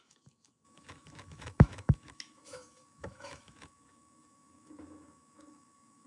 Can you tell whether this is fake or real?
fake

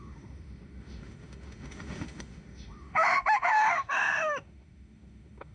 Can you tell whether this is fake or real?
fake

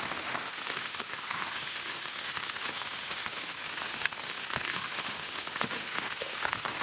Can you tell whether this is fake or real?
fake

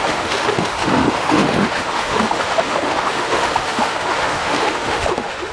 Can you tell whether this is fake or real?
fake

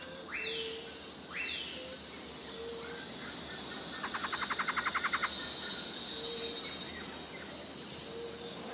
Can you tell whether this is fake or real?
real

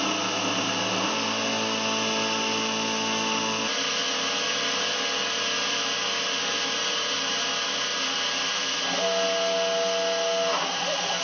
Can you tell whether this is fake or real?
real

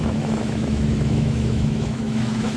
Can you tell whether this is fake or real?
fake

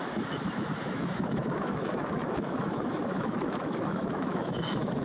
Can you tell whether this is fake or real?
fake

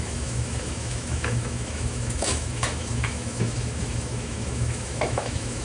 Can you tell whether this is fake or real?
fake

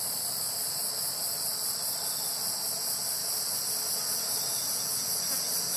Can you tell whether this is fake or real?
real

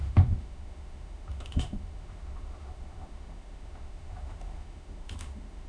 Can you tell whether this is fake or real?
fake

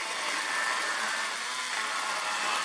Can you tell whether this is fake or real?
real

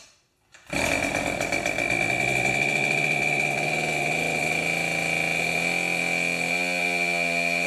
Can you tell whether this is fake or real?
real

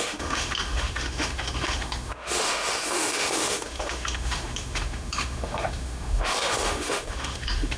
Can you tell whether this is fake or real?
fake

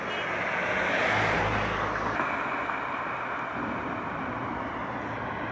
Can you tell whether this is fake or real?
real